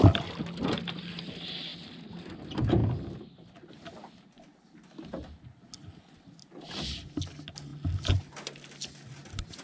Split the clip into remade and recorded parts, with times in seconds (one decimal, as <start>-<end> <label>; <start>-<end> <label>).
0.0-9.6 recorded

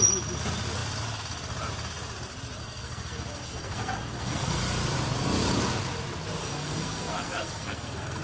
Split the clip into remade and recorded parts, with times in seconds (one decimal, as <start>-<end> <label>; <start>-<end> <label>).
0.0-2.6 recorded; 2.6-4.6 remade; 4.6-6.4 recorded; 6.4-8.2 remade

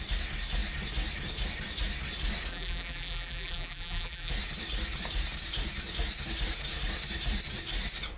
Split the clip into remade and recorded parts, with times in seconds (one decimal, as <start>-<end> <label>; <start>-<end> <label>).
0.0-2.5 recorded; 2.5-4.3 remade; 4.3-8.2 recorded